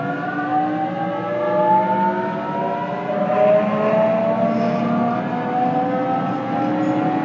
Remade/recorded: recorded